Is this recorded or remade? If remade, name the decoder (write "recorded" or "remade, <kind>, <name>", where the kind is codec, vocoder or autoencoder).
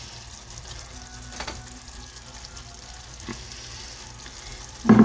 recorded